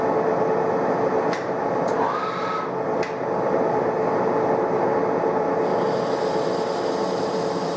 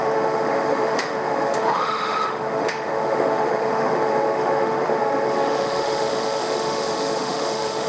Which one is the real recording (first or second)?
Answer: first